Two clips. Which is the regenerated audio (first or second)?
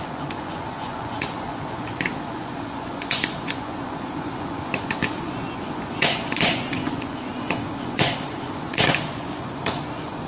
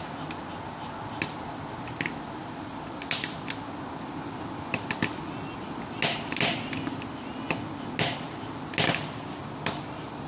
first